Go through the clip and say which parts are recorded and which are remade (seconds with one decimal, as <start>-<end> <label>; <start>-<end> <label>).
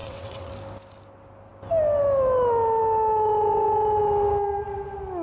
0.0-0.5 remade; 0.5-5.2 recorded